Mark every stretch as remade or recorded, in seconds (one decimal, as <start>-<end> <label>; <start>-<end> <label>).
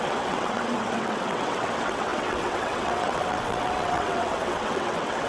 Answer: 0.0-5.3 remade